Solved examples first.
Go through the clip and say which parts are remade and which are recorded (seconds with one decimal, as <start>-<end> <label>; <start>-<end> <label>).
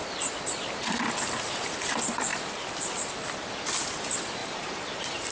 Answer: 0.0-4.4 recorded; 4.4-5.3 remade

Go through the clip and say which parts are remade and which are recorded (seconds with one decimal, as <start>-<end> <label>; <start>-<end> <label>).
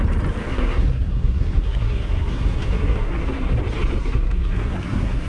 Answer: 0.0-0.4 recorded; 0.4-3.6 remade; 3.6-4.0 recorded; 4.0-5.3 remade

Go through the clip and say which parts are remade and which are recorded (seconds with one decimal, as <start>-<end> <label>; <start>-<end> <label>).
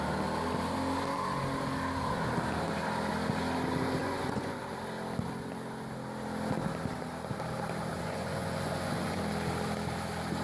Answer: 0.0-4.0 recorded; 4.0-4.6 remade; 4.6-7.9 recorded; 7.9-9.2 remade; 9.2-10.4 recorded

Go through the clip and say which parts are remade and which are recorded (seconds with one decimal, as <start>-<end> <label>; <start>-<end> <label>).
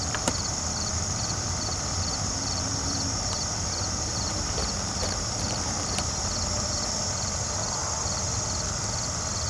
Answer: 0.0-7.8 remade; 7.8-9.5 recorded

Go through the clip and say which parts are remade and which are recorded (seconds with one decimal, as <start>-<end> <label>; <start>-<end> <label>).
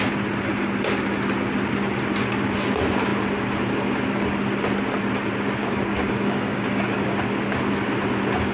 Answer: 0.0-5.6 recorded; 5.6-7.1 remade; 7.1-8.5 recorded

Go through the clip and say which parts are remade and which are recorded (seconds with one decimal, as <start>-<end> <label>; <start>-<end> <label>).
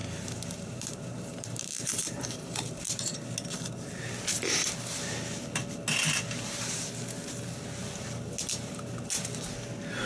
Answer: 0.0-3.2 remade; 3.2-10.1 recorded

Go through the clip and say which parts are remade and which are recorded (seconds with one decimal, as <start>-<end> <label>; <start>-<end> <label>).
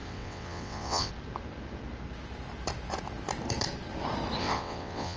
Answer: 0.0-1.1 remade; 1.1-4.4 recorded; 4.4-5.2 remade